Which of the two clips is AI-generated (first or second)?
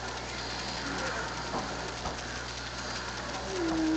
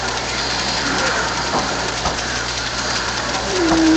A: second